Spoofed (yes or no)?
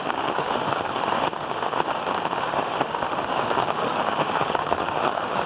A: yes